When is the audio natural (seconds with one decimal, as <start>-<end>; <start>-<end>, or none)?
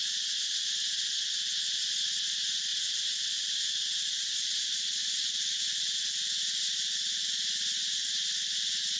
0.0-2.7; 4.5-5.0; 6.6-9.0